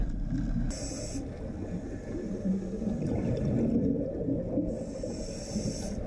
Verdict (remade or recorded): recorded